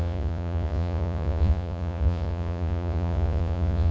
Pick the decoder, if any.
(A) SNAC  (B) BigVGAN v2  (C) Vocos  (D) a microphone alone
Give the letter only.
C